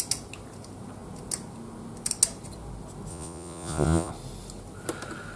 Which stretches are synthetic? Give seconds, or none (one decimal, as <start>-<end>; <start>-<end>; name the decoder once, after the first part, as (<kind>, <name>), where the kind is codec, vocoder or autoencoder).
3.1-4.1 (vocoder, Vocos)